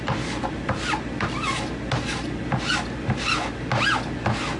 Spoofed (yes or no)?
no